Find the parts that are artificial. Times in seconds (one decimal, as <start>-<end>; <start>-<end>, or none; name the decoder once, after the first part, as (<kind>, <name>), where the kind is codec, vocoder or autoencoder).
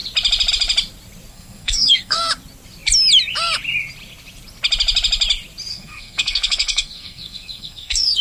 1.3-2.2 (codec, SNAC); 5.7-8.2